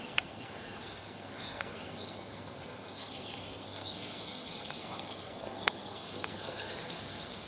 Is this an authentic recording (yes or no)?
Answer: no